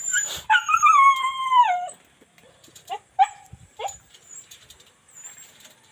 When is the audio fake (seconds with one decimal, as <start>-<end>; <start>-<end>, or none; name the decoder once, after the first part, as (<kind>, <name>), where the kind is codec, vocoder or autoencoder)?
0.0-1.6 (vocoder, BigVGAN v2); 2.7-5.9